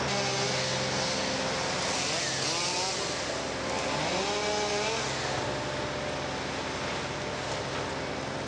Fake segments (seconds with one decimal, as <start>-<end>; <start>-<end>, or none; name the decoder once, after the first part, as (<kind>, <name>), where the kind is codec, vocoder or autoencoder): none